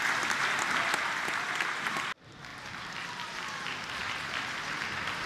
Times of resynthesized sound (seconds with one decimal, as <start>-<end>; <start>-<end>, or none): none